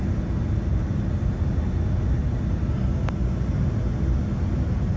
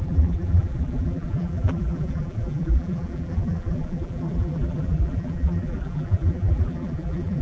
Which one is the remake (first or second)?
second